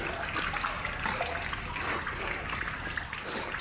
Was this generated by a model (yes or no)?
no